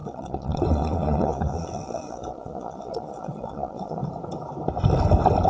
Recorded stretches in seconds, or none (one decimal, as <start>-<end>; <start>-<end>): 4.0-5.5